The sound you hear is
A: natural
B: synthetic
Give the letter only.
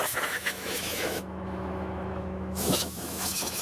B